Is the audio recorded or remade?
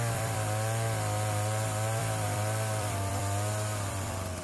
remade